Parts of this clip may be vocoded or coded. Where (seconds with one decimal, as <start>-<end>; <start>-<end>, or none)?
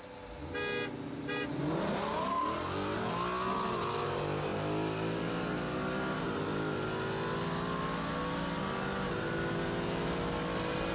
none